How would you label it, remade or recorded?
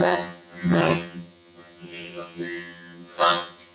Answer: remade